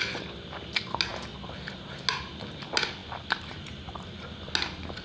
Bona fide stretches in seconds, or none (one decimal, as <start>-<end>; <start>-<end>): 0.0-5.0

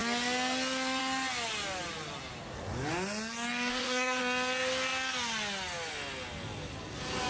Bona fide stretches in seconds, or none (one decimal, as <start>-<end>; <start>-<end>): 0.0-3.7; 4.2-7.3

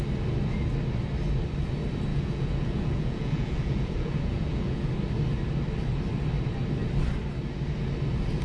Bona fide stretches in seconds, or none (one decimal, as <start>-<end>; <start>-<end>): 0.0-2.1; 4.9-8.4

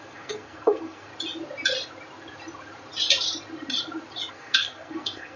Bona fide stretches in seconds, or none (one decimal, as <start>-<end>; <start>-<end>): 1.1-4.3

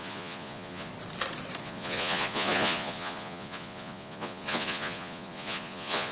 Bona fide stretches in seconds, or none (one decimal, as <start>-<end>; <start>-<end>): 0.9-1.6

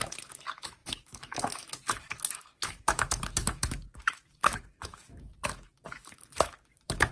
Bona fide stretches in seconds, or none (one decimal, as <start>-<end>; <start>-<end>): none

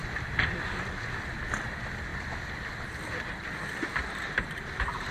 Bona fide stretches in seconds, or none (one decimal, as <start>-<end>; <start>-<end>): 0.0-4.0